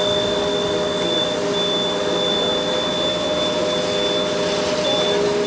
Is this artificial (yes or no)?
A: no